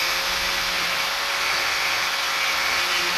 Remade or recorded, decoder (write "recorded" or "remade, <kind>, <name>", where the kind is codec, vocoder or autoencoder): recorded